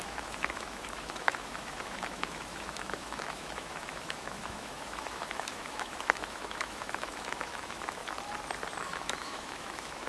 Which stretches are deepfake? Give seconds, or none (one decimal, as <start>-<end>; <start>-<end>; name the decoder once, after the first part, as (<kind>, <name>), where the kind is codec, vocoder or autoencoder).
0.0-8.0 (autoencoder, DAC-VAE); 8.8-10.1